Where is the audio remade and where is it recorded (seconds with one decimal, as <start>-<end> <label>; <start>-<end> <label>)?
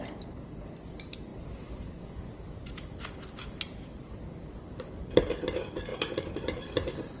0.0-7.2 recorded